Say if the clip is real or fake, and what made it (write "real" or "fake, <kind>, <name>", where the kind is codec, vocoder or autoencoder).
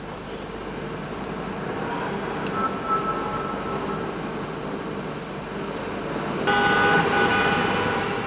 real